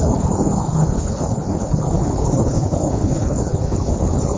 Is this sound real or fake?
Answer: fake